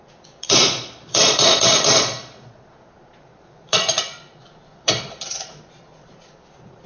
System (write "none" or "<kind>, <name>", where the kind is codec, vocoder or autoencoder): vocoder, Vocos